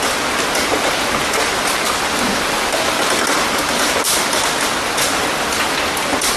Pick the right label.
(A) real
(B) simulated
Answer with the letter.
A